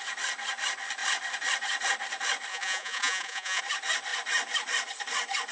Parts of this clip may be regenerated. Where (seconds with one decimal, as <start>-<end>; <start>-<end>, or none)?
2.5-3.6